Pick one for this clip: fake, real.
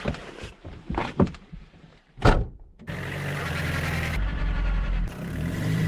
fake